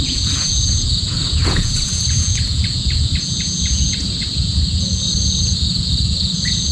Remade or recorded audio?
remade